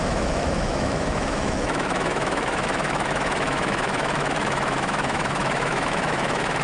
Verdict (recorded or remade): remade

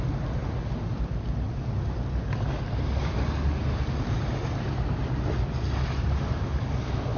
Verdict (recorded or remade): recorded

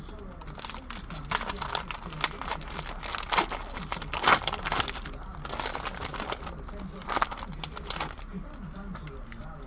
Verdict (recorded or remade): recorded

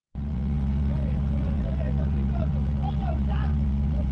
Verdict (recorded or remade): remade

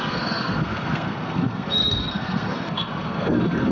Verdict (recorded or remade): remade